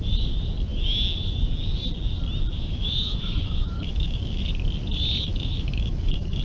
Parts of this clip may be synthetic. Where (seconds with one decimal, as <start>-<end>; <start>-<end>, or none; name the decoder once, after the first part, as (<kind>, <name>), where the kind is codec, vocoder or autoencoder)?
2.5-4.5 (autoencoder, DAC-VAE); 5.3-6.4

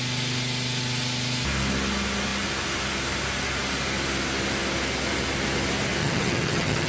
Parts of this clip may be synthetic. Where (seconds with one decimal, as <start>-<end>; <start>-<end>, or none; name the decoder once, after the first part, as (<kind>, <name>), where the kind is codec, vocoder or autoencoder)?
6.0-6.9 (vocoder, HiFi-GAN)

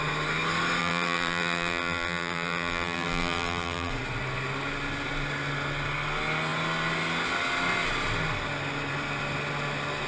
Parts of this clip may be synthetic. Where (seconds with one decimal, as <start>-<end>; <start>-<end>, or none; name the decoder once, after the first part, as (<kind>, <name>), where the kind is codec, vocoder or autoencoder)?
0.8-3.9 (vocoder, BigVGAN v2)